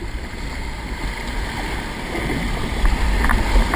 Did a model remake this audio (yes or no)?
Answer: no